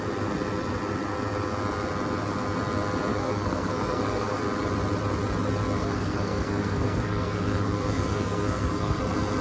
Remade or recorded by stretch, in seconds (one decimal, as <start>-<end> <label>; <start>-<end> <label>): 0.0-3.1 recorded; 3.1-4.4 remade; 4.4-5.8 recorded; 5.8-9.0 remade; 9.0-9.4 recorded